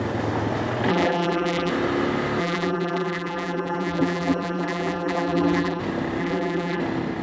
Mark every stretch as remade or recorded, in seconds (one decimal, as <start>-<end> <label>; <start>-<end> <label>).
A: 0.0-0.9 recorded; 0.9-1.7 remade; 1.7-2.4 recorded; 2.4-5.8 remade; 5.8-6.2 recorded; 6.2-6.8 remade; 6.8-7.2 recorded